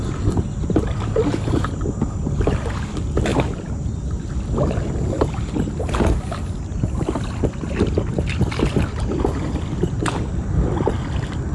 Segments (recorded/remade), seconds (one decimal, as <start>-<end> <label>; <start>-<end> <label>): 0.0-11.5 recorded